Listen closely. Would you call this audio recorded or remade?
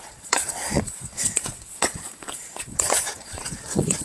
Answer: remade